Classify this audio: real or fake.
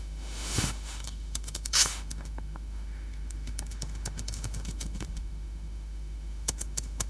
fake